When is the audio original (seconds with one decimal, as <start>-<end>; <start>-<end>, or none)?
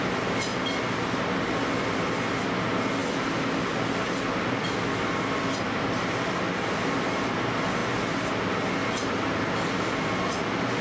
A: 0.0-10.8